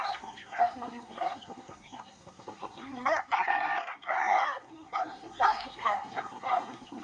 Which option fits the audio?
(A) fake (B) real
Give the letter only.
A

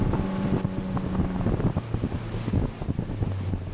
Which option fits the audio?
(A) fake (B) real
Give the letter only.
B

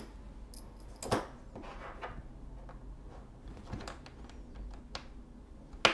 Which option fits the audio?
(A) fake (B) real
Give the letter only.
B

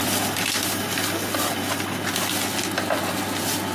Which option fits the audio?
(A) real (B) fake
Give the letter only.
A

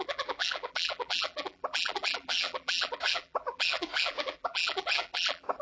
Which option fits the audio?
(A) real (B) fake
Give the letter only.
B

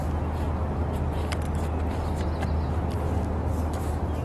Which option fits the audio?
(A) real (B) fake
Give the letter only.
A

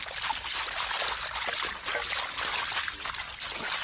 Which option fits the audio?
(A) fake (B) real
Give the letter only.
B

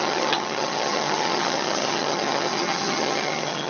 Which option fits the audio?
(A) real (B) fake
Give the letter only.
B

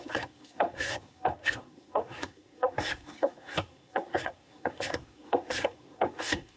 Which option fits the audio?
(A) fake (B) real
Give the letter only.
A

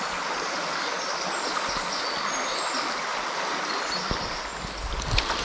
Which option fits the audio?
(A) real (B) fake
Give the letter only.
A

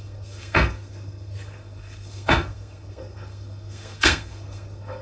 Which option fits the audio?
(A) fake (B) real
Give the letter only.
A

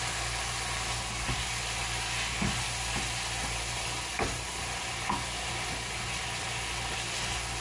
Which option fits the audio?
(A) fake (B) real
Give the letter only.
B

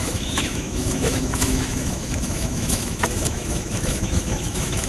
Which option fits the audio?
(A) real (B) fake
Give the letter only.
B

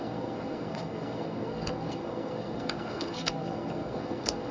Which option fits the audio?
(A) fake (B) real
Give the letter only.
A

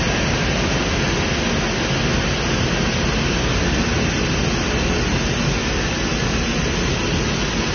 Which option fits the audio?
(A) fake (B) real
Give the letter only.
B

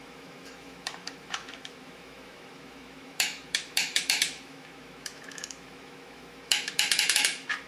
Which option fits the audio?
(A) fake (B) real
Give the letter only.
A